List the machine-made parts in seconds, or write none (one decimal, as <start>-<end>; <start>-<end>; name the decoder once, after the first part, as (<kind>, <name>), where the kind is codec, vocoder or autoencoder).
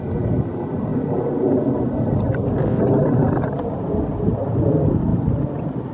none